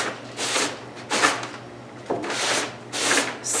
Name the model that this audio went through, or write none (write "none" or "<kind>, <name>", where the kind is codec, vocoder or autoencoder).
none